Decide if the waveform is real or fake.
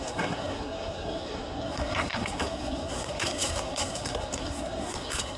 fake